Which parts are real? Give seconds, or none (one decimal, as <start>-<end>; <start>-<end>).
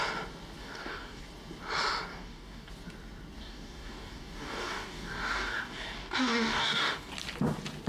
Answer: 0.0-0.6; 1.2-2.1; 2.7-3.4; 7.1-7.9